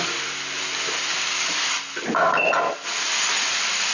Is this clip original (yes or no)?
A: yes